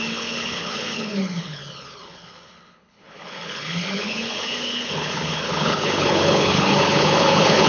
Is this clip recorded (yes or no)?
no